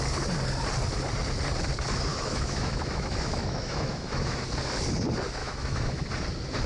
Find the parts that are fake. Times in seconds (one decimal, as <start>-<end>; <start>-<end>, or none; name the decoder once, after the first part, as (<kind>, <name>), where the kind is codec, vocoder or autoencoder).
2.1-4.4 (autoencoder, DAC-VAE); 5.4-6.1